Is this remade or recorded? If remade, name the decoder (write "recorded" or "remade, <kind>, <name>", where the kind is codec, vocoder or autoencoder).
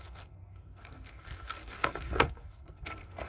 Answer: remade, codec, SNAC